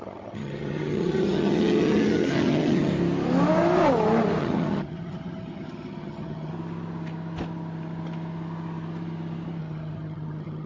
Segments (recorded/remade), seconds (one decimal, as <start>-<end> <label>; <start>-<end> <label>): 0.0-2.9 remade; 2.9-4.4 recorded; 4.4-6.5 remade; 6.5-9.6 recorded; 9.6-10.7 remade